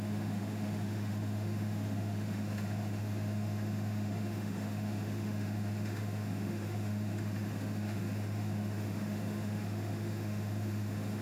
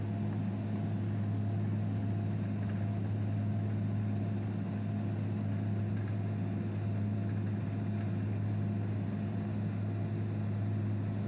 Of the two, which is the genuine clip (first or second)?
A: second